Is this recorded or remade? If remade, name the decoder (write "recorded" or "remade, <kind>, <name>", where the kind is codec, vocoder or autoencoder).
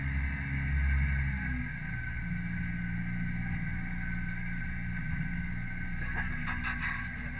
recorded